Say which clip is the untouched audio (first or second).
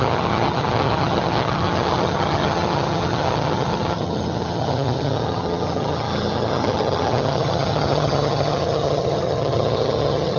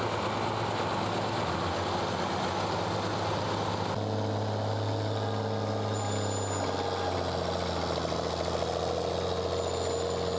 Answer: second